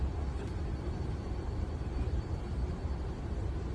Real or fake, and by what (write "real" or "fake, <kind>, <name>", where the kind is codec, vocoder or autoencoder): fake, vocoder, BigVGAN v2